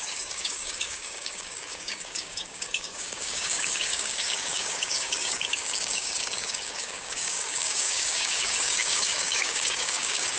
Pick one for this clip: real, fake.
fake